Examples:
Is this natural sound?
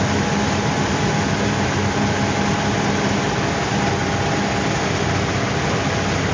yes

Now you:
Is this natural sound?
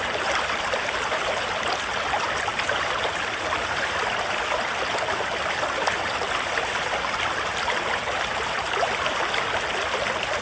yes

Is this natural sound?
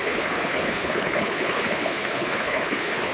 no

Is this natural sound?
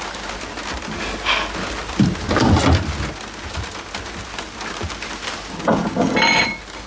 yes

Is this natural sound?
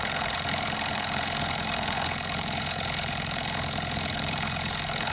no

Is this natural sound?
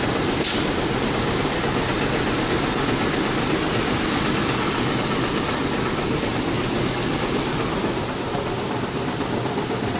yes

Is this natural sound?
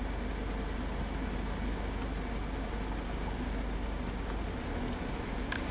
yes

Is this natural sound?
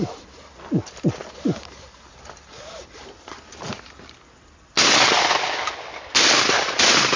yes